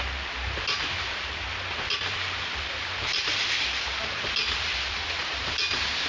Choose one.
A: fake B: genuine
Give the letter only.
B